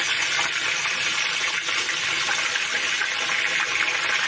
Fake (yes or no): no